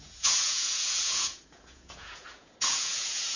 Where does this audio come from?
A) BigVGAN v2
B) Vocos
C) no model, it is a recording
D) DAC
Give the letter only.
B